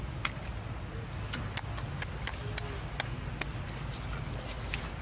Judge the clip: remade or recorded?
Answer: recorded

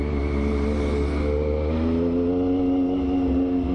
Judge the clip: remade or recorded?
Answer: recorded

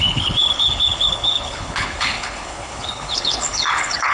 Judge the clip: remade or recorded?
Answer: remade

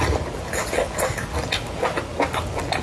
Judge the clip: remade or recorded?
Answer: recorded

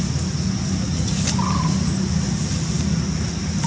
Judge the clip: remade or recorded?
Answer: recorded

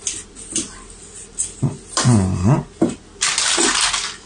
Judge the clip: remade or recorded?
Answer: recorded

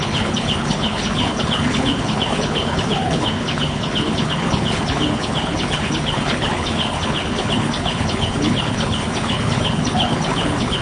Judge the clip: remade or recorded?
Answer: remade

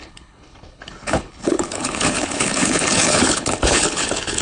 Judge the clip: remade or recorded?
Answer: remade